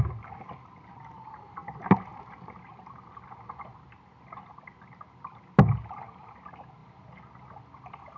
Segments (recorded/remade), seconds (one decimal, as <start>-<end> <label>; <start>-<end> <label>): 0.0-8.2 recorded